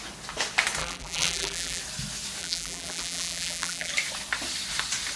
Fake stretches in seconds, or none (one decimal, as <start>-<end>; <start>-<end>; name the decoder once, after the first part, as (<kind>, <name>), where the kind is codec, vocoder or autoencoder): 0.8-1.8 (vocoder, BigVGAN v2); 2.4-3.9